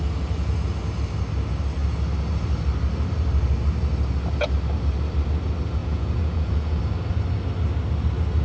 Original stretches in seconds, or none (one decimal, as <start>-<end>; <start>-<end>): 0.0-5.8; 6.8-8.4